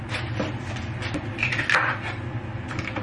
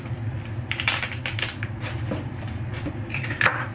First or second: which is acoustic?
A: first